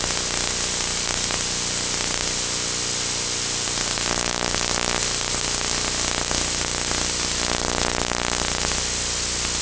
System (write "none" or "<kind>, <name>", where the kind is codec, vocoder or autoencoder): none